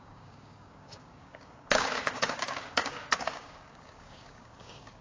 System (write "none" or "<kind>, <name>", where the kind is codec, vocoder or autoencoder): codec, DAC